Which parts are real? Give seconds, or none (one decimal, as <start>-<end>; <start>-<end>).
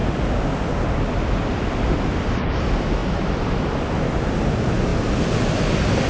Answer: 0.0-3.0; 3.6-6.1